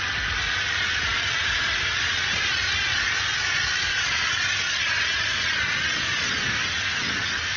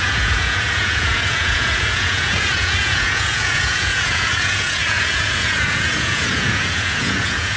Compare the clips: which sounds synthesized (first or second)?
second